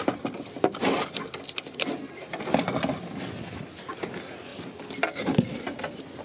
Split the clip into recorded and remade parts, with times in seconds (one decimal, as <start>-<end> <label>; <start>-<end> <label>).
0.0-6.2 recorded